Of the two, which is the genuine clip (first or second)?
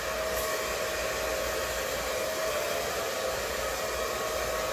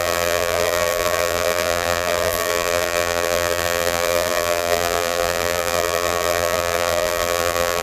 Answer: first